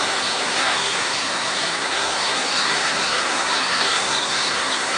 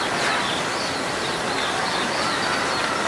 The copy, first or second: first